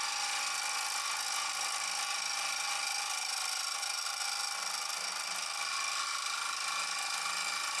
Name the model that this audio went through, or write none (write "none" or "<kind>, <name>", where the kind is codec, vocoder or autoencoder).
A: none